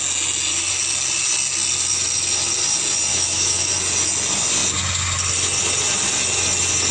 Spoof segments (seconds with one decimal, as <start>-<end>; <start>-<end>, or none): 3.1-3.7